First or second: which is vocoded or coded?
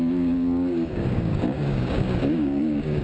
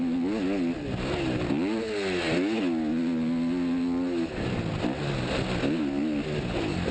first